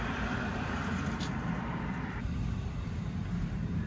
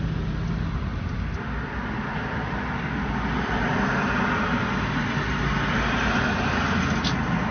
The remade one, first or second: first